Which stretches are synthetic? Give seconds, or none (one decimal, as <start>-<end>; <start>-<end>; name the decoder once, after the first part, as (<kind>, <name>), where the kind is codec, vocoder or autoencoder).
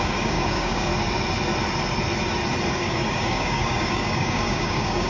0.0-0.9 (codec, DAC); 2.7-5.1